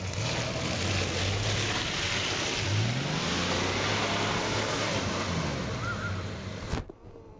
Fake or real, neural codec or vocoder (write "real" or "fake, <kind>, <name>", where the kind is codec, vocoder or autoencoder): real